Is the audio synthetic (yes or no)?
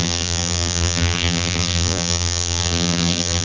yes